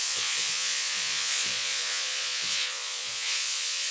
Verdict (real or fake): fake